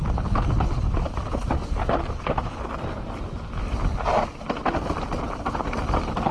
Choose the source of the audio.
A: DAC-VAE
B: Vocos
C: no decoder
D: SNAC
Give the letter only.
C